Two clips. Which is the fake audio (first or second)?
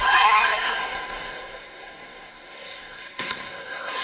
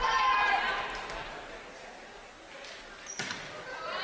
first